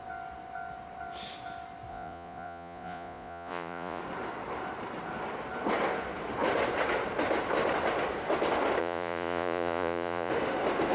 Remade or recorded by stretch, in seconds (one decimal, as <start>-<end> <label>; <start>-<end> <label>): 0.0-1.9 recorded; 1.9-4.0 remade; 4.0-8.8 recorded; 8.8-10.3 remade; 10.3-10.9 recorded